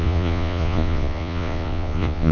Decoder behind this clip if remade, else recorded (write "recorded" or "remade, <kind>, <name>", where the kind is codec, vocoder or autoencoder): remade, vocoder, Vocos